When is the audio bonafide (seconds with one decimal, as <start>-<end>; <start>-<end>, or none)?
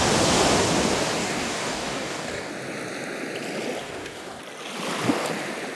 0.0-1.2; 2.5-3.8; 4.4-5.7